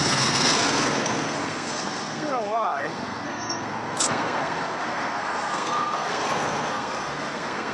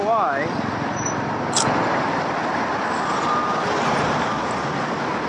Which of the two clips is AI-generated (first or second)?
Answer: first